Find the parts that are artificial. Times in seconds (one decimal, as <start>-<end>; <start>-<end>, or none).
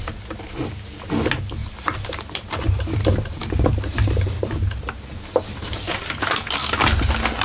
1.6-5.9